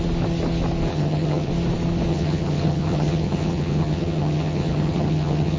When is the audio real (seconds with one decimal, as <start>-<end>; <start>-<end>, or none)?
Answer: 0.0-0.9; 1.5-2.1